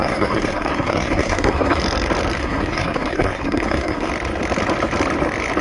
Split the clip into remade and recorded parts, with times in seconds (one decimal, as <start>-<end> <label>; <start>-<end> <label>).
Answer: 0.0-1.8 remade; 1.8-2.4 recorded; 2.4-4.1 remade; 4.1-5.6 recorded